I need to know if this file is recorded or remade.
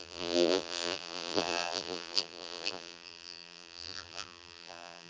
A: remade